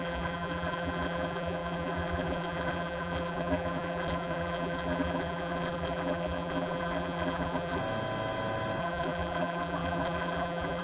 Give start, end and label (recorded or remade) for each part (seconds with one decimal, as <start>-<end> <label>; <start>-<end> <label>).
0.0-7.8 remade; 7.8-8.8 recorded; 8.8-10.8 remade